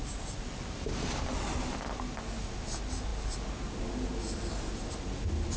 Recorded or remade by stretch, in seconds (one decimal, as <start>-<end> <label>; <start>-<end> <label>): 0.0-5.6 recorded